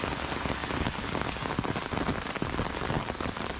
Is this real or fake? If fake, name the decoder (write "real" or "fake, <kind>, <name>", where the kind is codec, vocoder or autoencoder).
real